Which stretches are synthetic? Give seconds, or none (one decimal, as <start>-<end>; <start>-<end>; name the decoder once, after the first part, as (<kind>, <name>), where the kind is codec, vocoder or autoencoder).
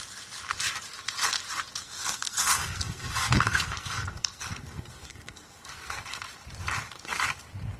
1.8-6.0 (codec, SNAC)